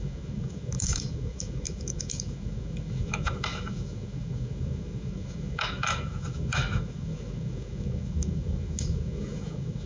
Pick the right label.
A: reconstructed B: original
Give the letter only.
A